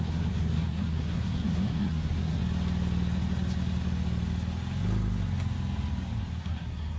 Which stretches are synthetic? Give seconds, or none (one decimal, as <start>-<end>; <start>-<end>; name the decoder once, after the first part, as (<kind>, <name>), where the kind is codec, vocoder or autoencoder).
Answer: 0.0-2.4 (codec, SNAC); 6.4-7.0